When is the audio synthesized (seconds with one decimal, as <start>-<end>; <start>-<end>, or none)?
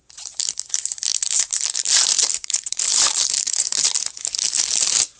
1.1-1.9; 2.3-3.9